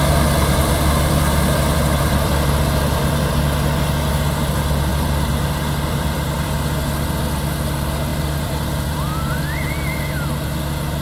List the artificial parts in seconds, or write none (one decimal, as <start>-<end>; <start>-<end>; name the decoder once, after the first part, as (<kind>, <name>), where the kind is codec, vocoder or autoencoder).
0.6-3.1 (vocoder, BigVGAN v2); 4.9-6.6; 8.1-9.4